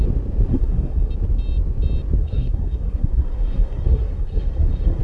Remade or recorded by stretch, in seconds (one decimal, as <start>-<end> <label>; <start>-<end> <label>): 0.0-0.5 recorded; 0.5-1.1 remade; 1.1-2.2 recorded; 2.2-5.0 remade